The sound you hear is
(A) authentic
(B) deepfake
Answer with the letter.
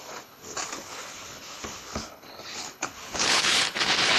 B